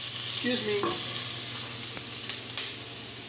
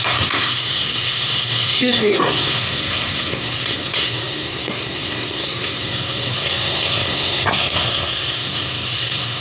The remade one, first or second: second